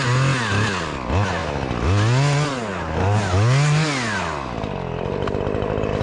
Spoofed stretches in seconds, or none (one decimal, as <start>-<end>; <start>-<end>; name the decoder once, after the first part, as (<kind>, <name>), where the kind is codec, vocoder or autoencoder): none